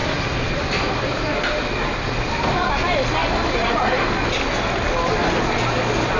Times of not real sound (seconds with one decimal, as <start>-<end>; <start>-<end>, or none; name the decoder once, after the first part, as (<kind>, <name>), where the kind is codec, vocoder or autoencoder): 0.0-2.7 (vocoder, BigVGAN v2); 3.2-3.8